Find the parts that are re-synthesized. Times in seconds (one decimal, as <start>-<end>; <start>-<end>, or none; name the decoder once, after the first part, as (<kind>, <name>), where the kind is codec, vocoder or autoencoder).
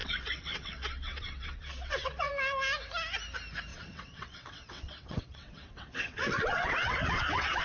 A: 0.0-2.3 (vocoder, WaveNeXt); 3.7-7.6